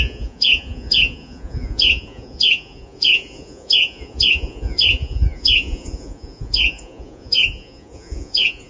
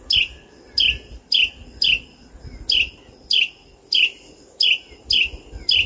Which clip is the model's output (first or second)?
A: first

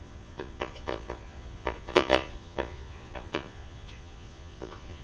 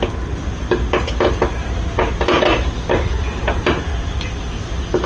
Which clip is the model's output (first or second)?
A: first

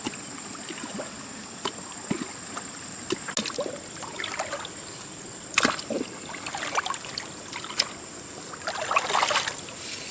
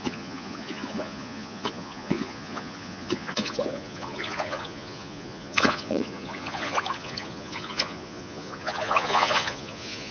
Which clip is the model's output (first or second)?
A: second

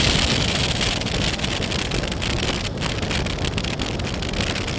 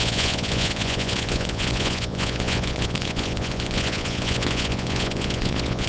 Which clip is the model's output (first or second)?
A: second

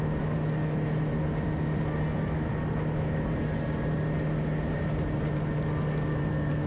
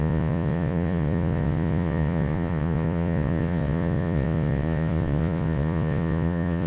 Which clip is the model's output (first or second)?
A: second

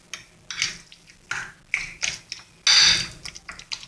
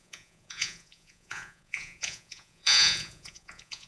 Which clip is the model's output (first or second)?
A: second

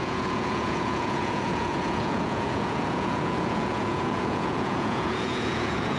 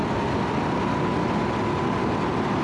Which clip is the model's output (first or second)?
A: first